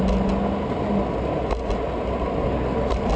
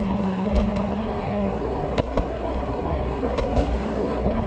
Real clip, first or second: first